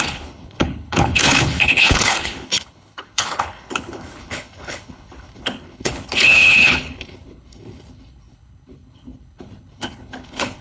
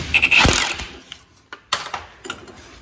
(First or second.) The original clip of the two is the second